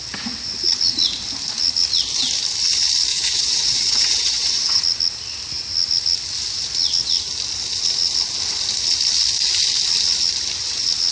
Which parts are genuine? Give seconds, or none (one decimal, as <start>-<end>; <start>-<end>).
0.0-3.1; 4.8-11.1